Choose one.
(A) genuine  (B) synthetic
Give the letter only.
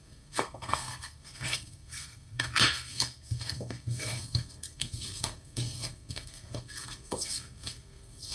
B